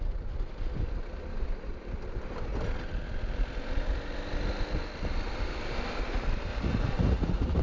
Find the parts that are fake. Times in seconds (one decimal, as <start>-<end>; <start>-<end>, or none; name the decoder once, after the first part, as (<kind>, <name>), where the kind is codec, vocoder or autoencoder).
6.5-7.6 (vocoder, Vocos)